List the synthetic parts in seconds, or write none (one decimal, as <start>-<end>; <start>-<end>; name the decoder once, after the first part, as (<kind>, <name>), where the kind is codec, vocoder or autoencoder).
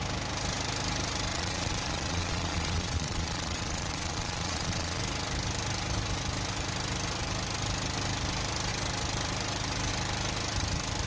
1.3-5.0 (vocoder, Vocos)